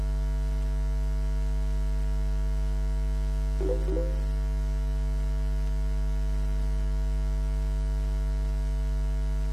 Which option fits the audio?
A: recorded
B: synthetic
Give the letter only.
A